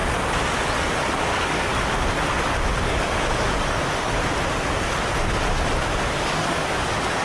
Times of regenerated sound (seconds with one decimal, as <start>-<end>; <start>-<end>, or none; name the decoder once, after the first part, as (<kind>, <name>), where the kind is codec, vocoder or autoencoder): 1.2-1.7 (codec, DAC); 2.8-3.8; 6.1-7.2